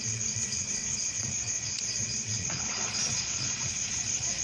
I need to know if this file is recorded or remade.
remade